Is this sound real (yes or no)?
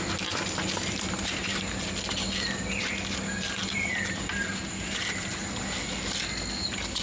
yes